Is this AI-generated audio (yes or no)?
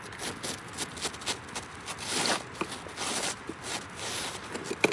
no